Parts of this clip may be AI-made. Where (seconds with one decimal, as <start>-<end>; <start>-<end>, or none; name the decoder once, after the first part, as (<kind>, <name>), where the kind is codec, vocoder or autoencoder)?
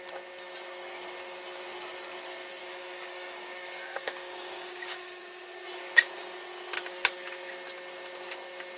2.6-5.2 (codec, DAC)